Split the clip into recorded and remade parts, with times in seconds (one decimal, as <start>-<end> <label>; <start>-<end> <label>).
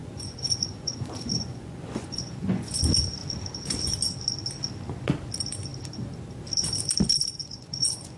0.0-2.8 remade; 2.8-7.4 recorded; 7.4-8.2 remade